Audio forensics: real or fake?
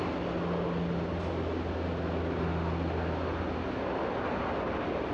real